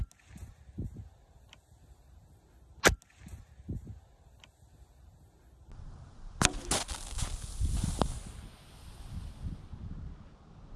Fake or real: real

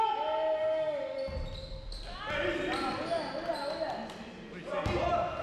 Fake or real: real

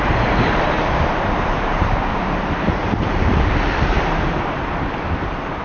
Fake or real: fake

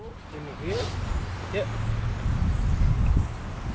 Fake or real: real